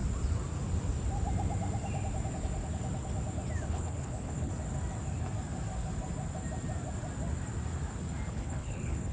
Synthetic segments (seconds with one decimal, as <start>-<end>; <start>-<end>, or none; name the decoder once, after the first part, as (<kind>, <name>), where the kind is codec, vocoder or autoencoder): 3.7-4.5 (codec, HILCodec); 8.3-9.1